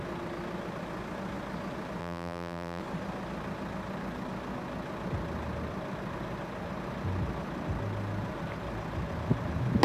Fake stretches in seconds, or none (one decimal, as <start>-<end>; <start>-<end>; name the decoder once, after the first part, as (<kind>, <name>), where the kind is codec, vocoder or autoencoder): 2.0-2.8 (vocoder, BigVGAN v2)